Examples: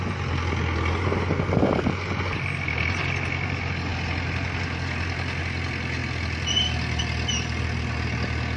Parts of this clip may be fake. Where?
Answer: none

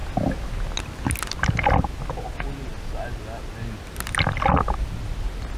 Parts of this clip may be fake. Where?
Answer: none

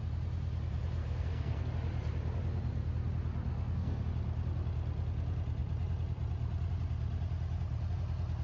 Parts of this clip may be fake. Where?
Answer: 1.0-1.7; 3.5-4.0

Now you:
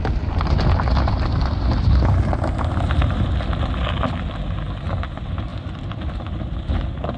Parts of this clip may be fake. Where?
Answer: none

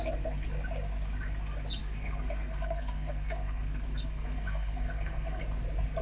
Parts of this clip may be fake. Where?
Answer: 1.8-5.4

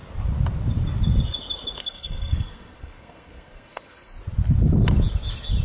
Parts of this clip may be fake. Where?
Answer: 1.8-4.2